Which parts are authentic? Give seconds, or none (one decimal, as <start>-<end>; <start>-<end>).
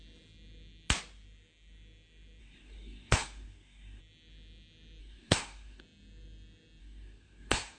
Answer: 0.0-2.4; 4.0-5.0; 5.8-6.8